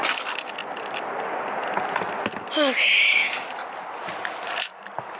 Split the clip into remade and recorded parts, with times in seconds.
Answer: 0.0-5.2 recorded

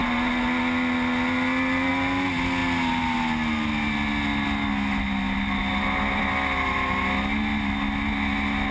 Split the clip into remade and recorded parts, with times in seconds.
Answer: 0.0-8.7 recorded

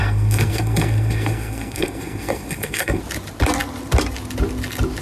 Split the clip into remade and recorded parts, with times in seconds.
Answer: 0.0-3.0 remade; 3.0-5.0 recorded